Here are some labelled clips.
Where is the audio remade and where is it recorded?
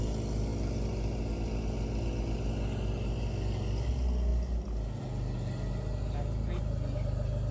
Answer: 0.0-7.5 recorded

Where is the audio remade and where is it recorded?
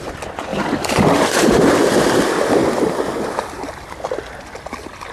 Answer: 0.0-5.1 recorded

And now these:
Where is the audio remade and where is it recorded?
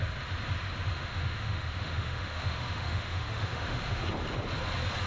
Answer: 0.0-0.9 recorded; 0.9-4.0 remade; 4.0-5.1 recorded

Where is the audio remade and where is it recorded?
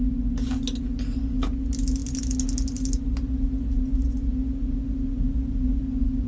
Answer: 0.0-6.3 recorded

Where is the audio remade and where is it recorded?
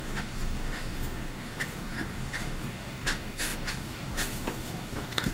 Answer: 0.0-5.3 remade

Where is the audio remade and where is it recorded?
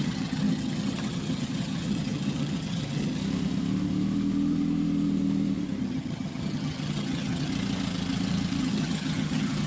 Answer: 0.0-3.2 remade; 3.2-5.8 recorded; 5.8-7.5 remade; 7.5-8.6 recorded; 8.6-9.7 remade